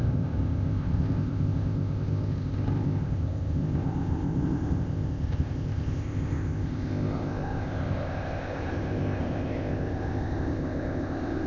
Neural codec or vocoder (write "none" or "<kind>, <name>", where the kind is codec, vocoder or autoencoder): codec, ZipCodec